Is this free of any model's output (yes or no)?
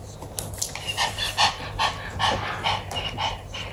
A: yes